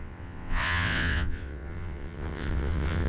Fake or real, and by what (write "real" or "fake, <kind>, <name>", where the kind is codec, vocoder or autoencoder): fake, vocoder, WaveNeXt